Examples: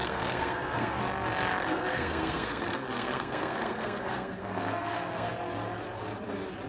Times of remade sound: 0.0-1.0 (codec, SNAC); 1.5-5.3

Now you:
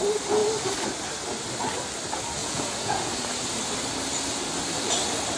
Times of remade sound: 2.4-3.1 (vocoder, Vocos)

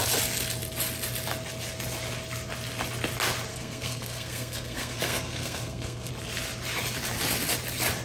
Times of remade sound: 3.5-6.1 (codec, SNAC)

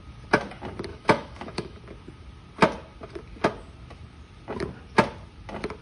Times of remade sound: 0.9-1.8 (autoencoder, DAC-VAE)